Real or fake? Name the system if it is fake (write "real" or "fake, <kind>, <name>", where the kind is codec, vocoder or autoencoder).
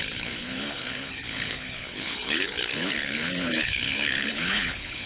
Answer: fake, codec, HILCodec